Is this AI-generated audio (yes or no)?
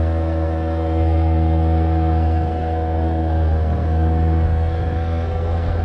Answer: yes